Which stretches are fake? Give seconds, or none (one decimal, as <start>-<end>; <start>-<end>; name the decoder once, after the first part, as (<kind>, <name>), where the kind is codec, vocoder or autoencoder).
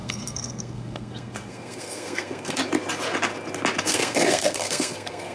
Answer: 0.0-2.6 (codec, SNAC); 3.8-5.3